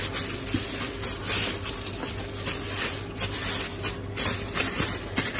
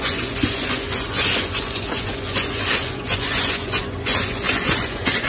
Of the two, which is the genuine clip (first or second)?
first